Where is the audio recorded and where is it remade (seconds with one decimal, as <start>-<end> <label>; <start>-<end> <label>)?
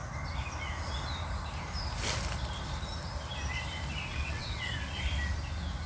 0.0-4.1 recorded; 4.1-4.7 remade; 4.7-5.9 recorded